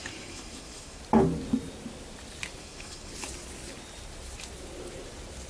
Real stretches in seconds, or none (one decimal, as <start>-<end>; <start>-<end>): 1.0-2.6; 3.1-5.5